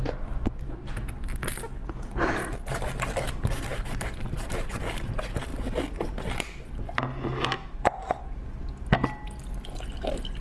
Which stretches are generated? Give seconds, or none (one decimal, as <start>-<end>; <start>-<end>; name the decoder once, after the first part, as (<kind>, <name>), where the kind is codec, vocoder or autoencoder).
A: 3.7-4.7 (vocoder, BigVGAN v2)